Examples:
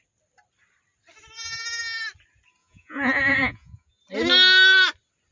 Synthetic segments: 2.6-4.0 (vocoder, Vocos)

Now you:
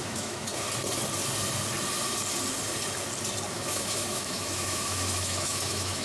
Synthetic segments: 0.0-0.5 (autoencoder, DAC-VAE); 3.5-6.0

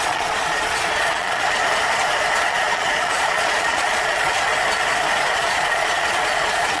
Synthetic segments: 0.0-1.6 (vocoder, Vocos); 2.5-4.5; 5.4-6.8

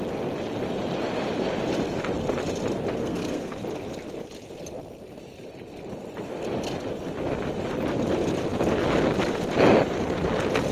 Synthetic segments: 3.0-3.5 (codec, SNAC)

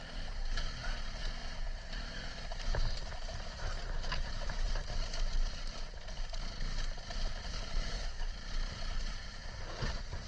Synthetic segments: 1.4-4.7 (vocoder, BigVGAN v2); 7.5-10.3

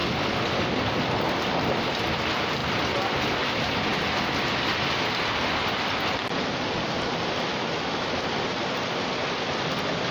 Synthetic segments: 7.5-8.2 (autoencoder, DAC-VAE)